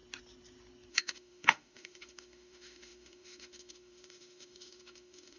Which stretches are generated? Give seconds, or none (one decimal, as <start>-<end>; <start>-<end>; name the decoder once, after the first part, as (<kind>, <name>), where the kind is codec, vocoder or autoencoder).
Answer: 0.9-5.4 (autoencoder, DAC-VAE)